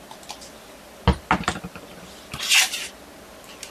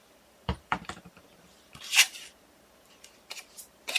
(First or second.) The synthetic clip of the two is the second